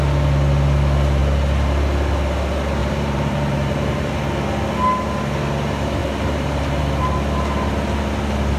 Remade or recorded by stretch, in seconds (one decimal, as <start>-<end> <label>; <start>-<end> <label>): 0.0-2.8 recorded; 2.8-4.1 remade; 4.1-6.0 recorded; 6.0-6.8 remade; 6.8-8.6 recorded